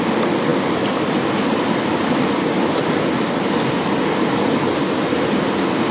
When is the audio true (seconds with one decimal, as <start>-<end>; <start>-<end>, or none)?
0.0-5.9